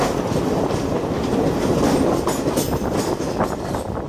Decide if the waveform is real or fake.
real